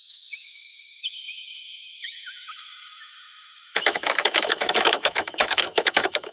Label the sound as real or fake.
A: fake